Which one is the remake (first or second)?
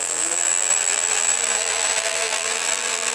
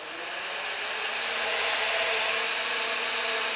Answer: first